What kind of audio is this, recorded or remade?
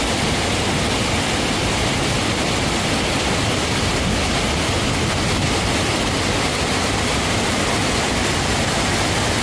recorded